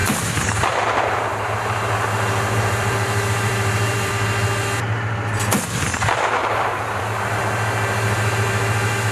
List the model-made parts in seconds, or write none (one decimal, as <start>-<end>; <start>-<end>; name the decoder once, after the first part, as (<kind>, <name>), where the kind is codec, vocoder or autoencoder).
0.0-4.1 (vocoder, BigVGAN v2); 6.4-7.4